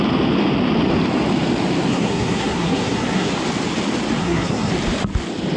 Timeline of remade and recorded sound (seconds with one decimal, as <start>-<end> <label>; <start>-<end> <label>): 0.0-1.9 recorded; 1.9-3.3 remade; 3.3-4.2 recorded; 4.2-4.7 remade; 4.7-5.6 recorded